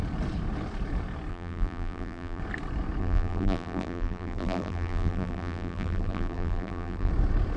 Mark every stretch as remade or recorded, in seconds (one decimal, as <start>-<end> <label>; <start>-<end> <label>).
0.0-1.3 recorded; 1.3-2.4 remade; 2.4-3.0 recorded; 3.0-7.1 remade; 7.1-7.6 recorded